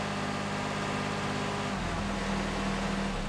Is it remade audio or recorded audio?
recorded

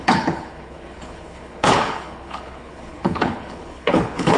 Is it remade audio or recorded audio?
remade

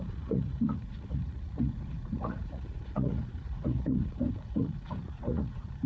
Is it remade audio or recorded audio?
remade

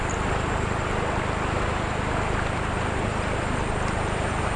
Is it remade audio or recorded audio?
recorded